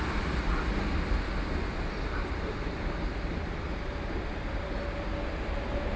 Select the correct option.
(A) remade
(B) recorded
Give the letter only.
B